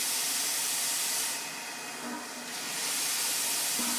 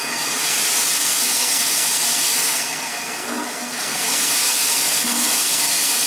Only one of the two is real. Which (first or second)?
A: first